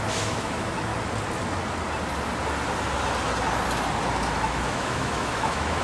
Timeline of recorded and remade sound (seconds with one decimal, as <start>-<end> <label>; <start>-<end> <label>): 0.0-0.9 remade; 0.9-4.4 recorded; 4.4-5.8 remade